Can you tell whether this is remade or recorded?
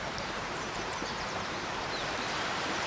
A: remade